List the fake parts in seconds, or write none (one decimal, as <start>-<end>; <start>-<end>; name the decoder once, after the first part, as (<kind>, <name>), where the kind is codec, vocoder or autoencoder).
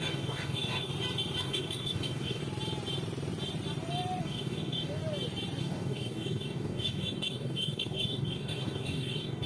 0.0-0.9 (codec, DAC); 1.4-2.4; 4.2-5.0; 5.6-9.5